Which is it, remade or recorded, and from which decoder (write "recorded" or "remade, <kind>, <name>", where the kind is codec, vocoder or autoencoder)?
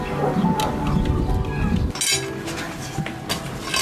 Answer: recorded